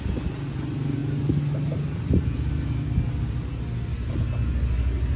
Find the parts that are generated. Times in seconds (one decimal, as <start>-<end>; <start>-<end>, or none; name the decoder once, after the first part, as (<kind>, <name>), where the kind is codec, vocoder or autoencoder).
none